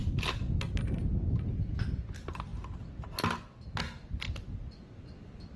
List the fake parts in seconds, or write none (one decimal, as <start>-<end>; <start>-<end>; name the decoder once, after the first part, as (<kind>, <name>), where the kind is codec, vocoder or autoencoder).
none